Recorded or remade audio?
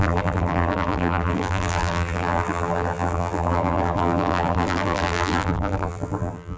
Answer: remade